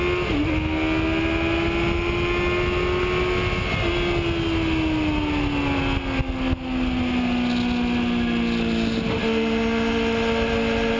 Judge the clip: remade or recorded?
recorded